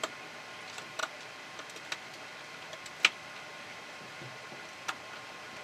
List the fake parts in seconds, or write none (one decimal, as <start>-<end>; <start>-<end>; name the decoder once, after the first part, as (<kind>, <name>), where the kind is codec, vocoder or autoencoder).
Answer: none